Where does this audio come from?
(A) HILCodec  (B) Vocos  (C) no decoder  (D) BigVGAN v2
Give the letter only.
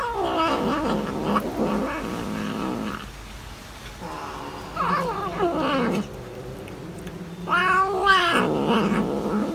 C